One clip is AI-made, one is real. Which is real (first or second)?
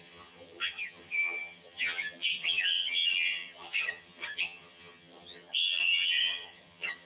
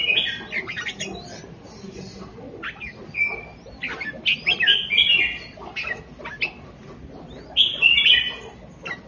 second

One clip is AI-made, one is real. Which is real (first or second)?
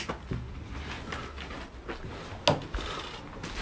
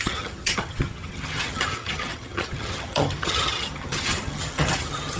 first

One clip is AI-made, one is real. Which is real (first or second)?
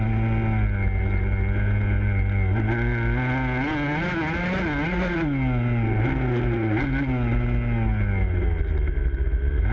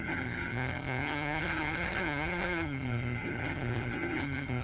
first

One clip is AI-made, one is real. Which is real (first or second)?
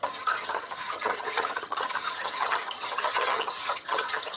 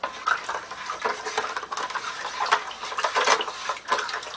second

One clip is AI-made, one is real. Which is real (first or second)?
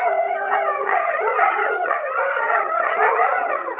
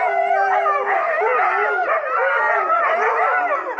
second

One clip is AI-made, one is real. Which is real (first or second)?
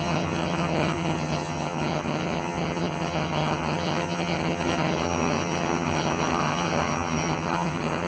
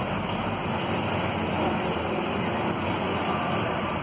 second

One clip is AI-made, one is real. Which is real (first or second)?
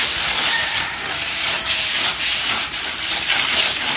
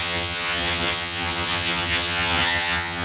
first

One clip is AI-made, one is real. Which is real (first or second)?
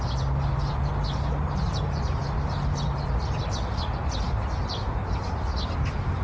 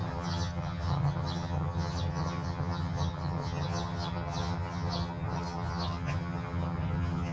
first